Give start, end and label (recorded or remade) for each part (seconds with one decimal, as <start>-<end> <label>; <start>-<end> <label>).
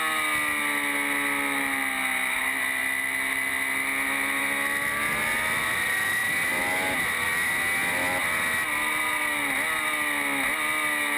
0.0-11.2 recorded